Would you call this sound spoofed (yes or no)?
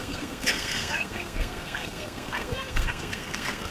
yes